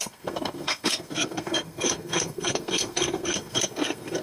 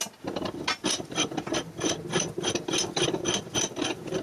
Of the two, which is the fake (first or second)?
first